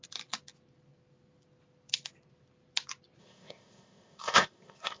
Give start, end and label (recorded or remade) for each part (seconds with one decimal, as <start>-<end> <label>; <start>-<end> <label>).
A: 0.0-3.2 recorded; 3.2-5.0 remade